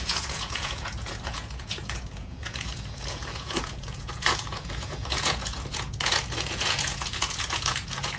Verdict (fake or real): fake